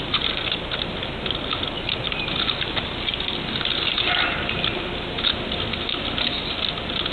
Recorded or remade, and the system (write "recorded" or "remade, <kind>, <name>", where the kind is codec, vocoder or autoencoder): recorded